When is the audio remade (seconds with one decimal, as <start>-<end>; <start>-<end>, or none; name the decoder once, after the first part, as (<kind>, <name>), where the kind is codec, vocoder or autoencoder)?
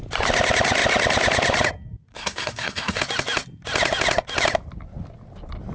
2.1-3.0 (codec, SNAC)